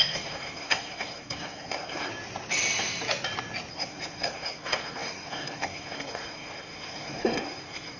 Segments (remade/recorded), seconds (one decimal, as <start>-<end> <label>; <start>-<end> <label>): 0.0-2.1 remade; 2.1-3.7 recorded; 3.7-8.0 remade